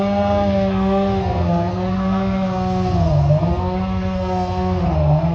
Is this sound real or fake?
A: fake